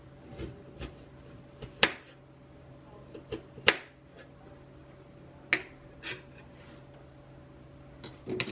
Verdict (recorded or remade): recorded